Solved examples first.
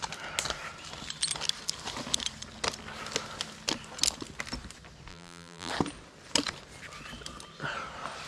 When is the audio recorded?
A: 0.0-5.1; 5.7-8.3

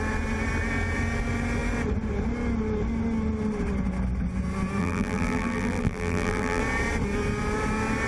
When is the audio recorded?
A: 0.0-4.8; 6.6-8.1

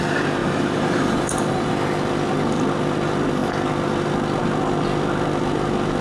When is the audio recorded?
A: 0.0-0.4; 1.7-6.0

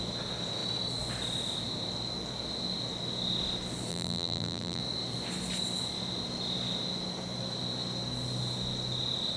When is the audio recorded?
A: 0.0-3.9; 4.8-9.4

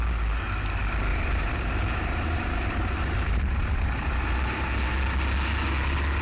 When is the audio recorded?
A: 0.0-1.1; 4.4-6.2